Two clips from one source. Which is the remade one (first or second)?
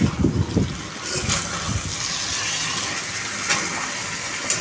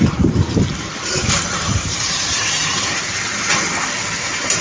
second